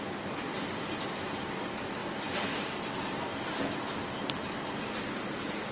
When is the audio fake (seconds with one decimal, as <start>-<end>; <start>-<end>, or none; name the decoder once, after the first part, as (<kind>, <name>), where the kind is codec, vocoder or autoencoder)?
none